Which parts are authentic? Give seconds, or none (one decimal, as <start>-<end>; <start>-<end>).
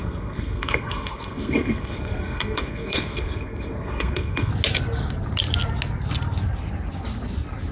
4.5-7.7